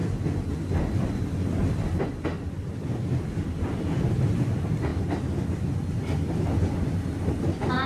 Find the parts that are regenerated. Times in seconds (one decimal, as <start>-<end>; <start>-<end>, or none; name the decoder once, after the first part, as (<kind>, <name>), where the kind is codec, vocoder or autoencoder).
none